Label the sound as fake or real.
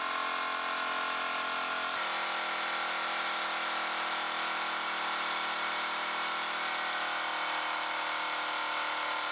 real